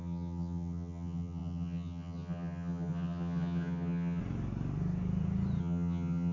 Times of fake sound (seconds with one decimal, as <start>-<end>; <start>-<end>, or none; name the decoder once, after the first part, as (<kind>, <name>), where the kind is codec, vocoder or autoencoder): 0.0-4.2 (vocoder, HiFi-GAN); 5.6-6.3